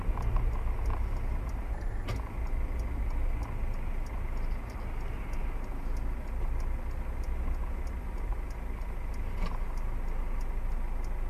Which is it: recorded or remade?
recorded